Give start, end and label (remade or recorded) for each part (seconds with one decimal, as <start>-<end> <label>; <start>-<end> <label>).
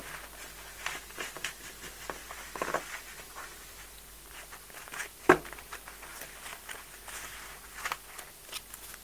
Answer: 0.0-9.0 recorded